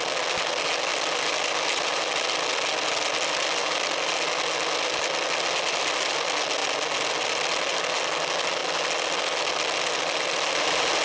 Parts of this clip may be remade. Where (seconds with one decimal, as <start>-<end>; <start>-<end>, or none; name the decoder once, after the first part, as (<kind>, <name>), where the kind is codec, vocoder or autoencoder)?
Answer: none